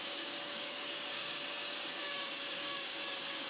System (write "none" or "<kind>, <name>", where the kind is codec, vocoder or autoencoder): codec, DAC